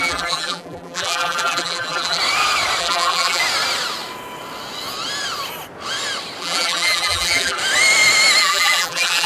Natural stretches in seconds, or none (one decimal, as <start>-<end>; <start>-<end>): 2.2-2.8; 3.4-6.4; 7.6-8.4